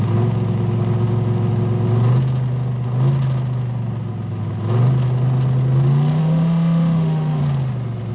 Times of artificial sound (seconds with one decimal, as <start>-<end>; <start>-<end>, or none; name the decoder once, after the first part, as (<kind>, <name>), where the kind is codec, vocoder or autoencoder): 6.2-7.4 (autoencoder, DAC-VAE)